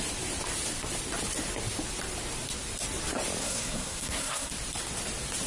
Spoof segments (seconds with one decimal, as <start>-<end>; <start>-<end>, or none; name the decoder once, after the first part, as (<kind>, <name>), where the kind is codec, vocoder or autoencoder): 3.4-4.5 (codec, SNAC)